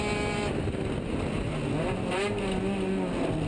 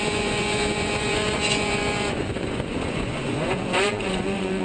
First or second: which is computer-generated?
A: second